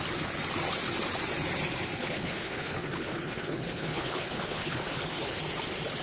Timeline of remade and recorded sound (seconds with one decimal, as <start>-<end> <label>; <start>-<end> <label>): 0.0-2.0 recorded; 2.0-5.4 remade; 5.4-6.0 recorded